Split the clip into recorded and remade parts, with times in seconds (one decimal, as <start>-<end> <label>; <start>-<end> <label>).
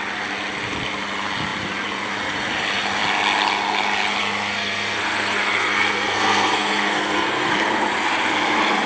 0.0-4.2 recorded; 4.2-7.5 remade; 7.5-8.9 recorded